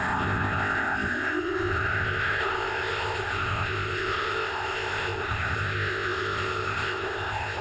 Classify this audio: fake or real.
fake